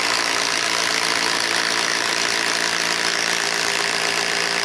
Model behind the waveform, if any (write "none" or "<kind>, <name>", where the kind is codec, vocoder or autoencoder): none